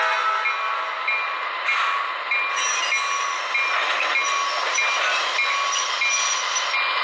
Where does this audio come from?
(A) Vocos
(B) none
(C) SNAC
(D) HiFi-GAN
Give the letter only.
B